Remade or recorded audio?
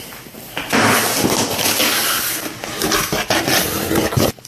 recorded